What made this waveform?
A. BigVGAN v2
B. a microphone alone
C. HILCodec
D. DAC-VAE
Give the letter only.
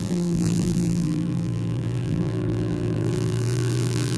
A